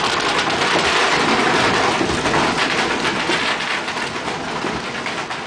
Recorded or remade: recorded